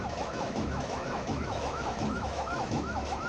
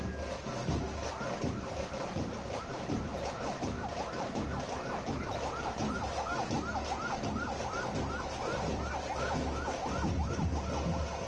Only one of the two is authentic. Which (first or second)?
second